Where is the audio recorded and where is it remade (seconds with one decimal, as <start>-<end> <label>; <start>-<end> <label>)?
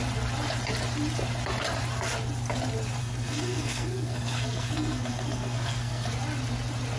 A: 0.0-3.0 recorded; 3.0-6.1 remade; 6.1-7.0 recorded